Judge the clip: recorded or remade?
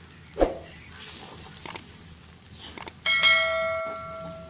recorded